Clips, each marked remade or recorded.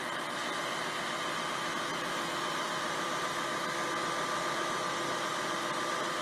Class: recorded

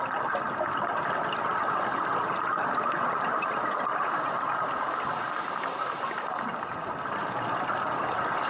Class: recorded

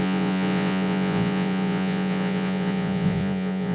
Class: remade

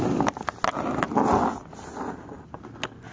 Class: recorded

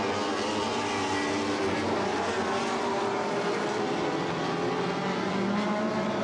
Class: recorded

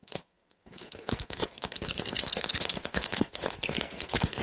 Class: remade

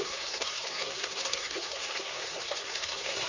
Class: remade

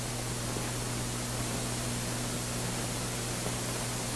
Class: recorded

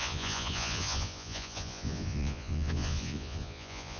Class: remade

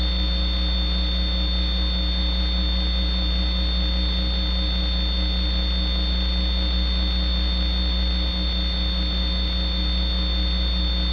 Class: recorded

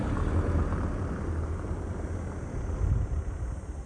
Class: recorded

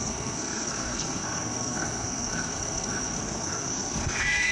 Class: remade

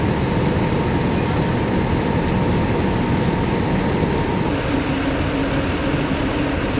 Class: recorded